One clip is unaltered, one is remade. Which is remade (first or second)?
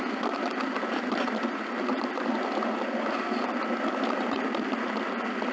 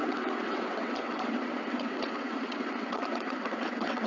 second